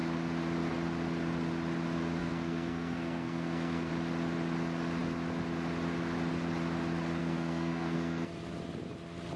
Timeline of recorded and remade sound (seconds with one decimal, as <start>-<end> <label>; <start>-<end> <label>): 0.0-2.2 recorded; 2.2-3.9 remade; 3.9-7.2 recorded; 7.2-8.3 remade; 8.3-9.4 recorded